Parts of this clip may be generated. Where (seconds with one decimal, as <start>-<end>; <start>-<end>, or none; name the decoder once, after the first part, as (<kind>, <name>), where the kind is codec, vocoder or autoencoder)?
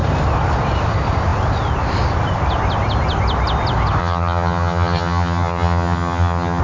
4.0-6.6 (vocoder, HiFi-GAN)